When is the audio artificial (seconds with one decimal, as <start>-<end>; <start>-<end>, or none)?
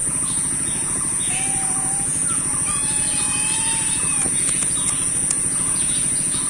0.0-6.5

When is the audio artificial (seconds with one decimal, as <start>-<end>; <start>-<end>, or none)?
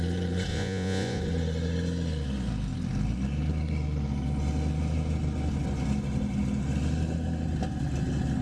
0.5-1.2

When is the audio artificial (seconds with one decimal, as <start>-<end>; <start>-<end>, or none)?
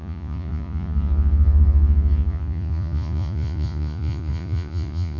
0.0-5.2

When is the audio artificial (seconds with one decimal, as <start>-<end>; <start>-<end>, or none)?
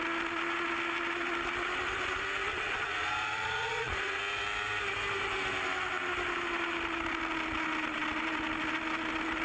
2.5-4.2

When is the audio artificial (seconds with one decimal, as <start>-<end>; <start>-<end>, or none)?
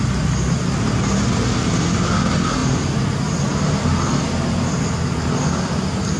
none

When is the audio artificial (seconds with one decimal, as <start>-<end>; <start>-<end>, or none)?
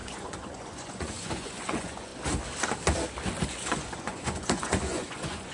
0.0-2.1; 3.5-5.5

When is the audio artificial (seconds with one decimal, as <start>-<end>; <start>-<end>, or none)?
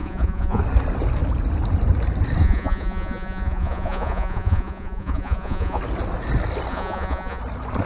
0.0-0.6; 2.4-5.8; 6.7-7.4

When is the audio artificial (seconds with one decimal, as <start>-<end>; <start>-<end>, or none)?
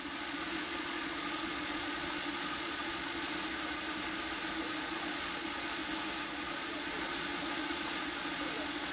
0.0-3.3; 4.8-5.8; 6.3-8.9